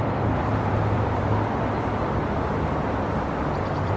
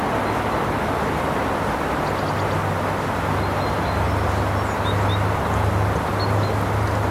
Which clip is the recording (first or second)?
second